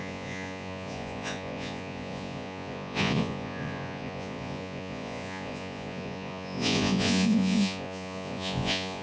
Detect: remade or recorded remade